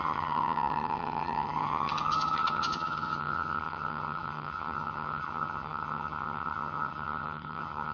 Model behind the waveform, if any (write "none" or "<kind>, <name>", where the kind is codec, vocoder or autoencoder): vocoder, HiFi-GAN